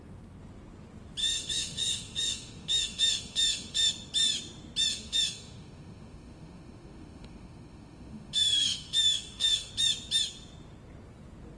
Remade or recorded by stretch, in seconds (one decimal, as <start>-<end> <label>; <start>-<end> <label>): 0.0-1.2 recorded; 1.2-3.9 remade; 3.9-4.9 recorded; 4.9-9.7 remade; 9.7-11.6 recorded